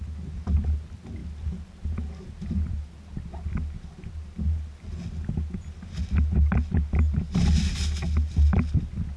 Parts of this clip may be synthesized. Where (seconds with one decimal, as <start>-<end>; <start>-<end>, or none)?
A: none